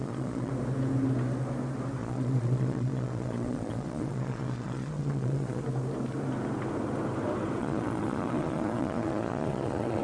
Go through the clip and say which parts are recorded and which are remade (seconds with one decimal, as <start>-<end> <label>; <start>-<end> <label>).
0.0-0.5 remade; 0.5-2.0 recorded; 2.0-5.6 remade; 5.6-7.6 recorded; 7.6-10.0 remade